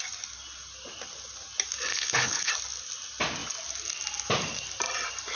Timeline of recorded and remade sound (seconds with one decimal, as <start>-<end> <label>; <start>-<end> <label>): 0.0-1.9 recorded; 1.9-2.5 remade; 2.5-5.4 recorded